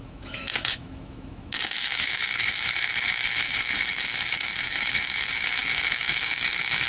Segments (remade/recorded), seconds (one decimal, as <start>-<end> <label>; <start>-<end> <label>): 0.0-6.9 remade